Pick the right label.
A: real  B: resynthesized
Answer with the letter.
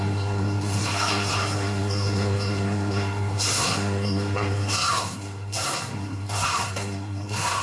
B